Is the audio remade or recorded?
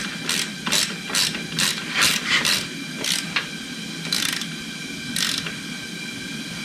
recorded